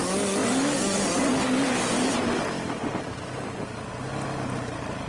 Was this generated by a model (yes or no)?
no